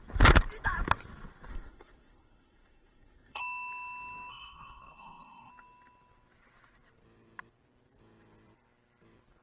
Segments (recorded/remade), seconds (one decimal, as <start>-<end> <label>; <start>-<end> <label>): 0.0-1.5 recorded; 1.5-3.4 remade; 3.4-4.3 recorded; 4.3-5.5 remade; 5.5-9.4 recorded